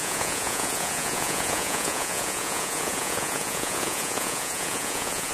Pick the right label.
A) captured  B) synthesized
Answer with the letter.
B